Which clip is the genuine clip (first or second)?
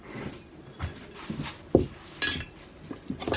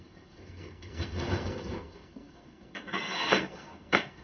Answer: first